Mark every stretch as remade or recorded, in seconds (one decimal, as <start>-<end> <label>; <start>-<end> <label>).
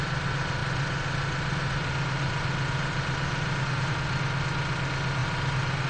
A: 0.0-5.9 recorded